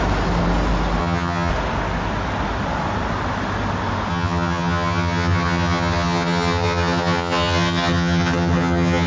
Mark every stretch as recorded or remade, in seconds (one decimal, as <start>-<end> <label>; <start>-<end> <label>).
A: 0.0-1.0 recorded; 1.0-1.5 remade; 1.5-4.1 recorded; 4.1-9.1 remade